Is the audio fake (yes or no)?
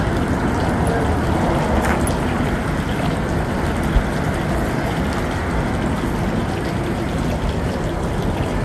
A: no